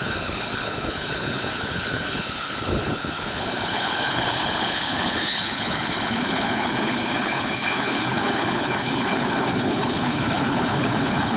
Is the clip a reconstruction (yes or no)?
yes